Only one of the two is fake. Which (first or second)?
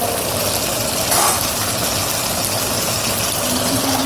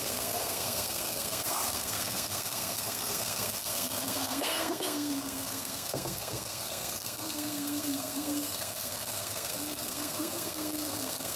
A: second